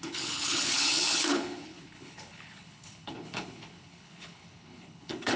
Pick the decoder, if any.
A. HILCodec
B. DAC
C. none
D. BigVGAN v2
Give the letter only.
A